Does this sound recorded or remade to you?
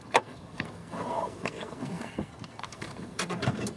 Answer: remade